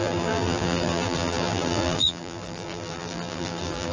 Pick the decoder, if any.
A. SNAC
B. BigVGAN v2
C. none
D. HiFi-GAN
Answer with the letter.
B